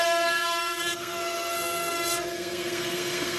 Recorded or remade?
remade